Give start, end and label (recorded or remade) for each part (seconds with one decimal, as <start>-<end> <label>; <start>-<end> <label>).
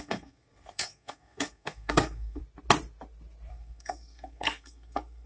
0.0-2.4 remade; 2.4-3.5 recorded; 3.5-5.3 remade